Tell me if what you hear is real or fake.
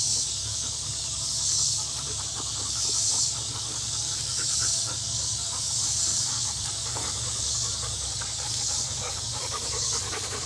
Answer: fake